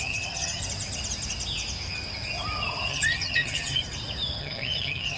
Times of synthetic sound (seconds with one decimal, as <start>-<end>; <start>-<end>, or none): 0.0-0.6; 2.9-3.8; 4.4-5.2